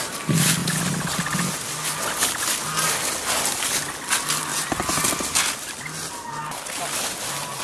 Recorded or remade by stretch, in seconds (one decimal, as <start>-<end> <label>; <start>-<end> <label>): 0.0-7.6 recorded